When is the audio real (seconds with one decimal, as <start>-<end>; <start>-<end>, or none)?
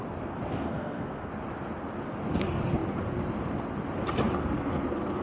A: 0.0-0.5; 1.3-5.2